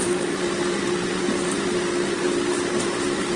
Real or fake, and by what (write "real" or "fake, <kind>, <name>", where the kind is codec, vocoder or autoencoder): real